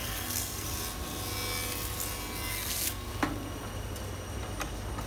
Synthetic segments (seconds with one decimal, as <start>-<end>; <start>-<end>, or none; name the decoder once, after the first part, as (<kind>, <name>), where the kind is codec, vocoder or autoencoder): 0.0-0.7 (codec, SNAC); 2.5-3.1